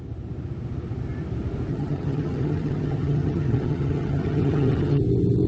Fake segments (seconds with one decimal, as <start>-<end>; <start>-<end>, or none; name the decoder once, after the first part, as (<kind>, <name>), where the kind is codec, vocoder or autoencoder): 1.7-5.0 (vocoder, HiFi-GAN)